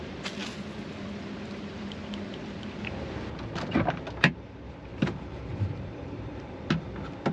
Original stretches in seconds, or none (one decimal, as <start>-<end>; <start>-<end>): 0.0-4.9; 6.6-7.3